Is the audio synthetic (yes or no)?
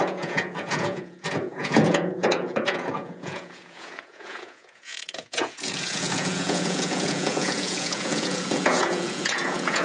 yes